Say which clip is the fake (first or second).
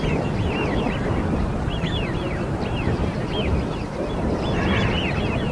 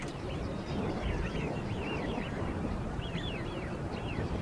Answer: second